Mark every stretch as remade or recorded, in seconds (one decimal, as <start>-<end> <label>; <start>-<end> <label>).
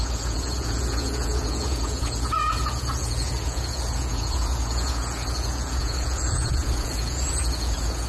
0.0-8.1 remade